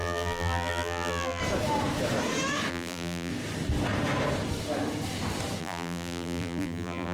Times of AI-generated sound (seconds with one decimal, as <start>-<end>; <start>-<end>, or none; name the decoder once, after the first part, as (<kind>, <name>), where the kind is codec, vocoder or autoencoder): 0.0-1.4 (vocoder, BigVGAN v2); 2.7-3.3; 5.6-7.1